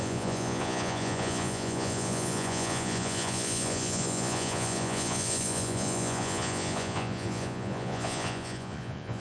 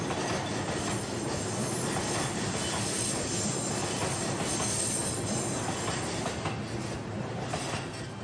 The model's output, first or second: first